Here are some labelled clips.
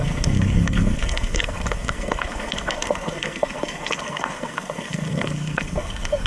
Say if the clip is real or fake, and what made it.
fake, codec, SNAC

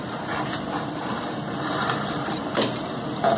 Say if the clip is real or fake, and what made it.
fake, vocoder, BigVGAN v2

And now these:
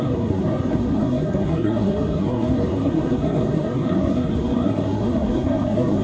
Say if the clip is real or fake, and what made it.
fake, codec, SNAC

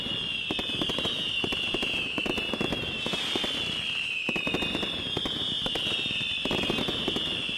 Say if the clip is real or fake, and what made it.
real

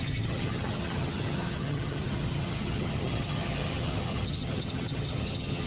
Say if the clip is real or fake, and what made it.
fake, vocoder, HiFi-GAN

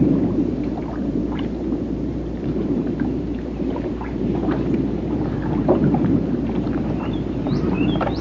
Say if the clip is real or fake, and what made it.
fake, vocoder, BigVGAN v2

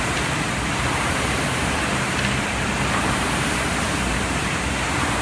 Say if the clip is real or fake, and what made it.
fake, vocoder, BigVGAN v2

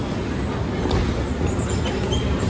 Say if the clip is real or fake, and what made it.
real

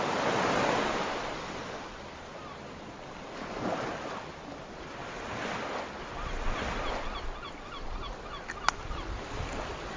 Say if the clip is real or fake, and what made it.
real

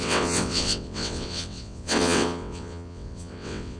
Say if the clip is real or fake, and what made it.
fake, vocoder, WaveNeXt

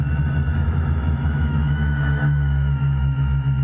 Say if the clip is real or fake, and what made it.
fake, autoencoder, DAC-VAE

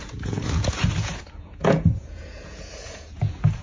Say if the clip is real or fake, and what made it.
fake, vocoder, Vocos